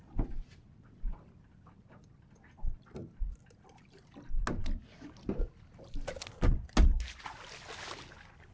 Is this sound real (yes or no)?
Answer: yes